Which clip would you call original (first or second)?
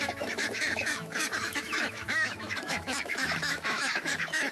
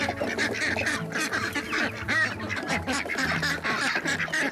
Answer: second